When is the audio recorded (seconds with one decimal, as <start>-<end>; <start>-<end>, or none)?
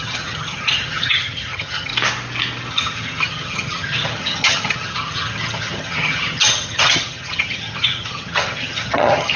1.9-2.7